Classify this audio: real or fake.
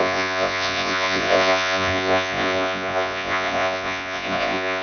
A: fake